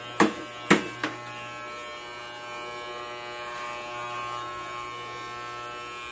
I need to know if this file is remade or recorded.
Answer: recorded